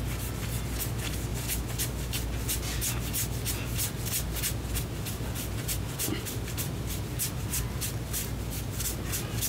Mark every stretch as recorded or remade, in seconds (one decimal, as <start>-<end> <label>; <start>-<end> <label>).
0.0-9.5 recorded